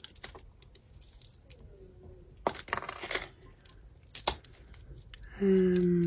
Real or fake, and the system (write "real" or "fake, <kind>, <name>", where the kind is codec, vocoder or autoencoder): real